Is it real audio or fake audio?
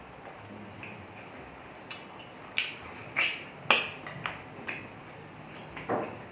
real